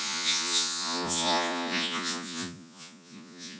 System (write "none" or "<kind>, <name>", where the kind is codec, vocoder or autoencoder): vocoder, Vocos